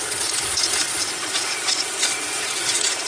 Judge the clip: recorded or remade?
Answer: remade